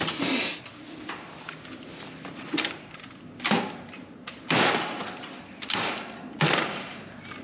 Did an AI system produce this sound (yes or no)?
no